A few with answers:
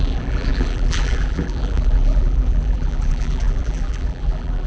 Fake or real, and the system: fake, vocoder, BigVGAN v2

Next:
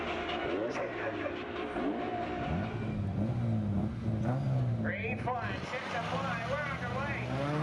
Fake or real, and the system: real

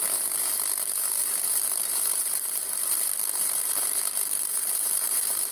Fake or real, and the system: fake, vocoder, BigVGAN v2